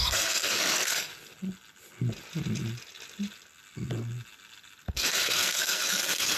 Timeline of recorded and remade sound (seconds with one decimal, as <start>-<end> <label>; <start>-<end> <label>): 0.0-1.1 remade; 1.1-4.9 recorded; 4.9-6.4 remade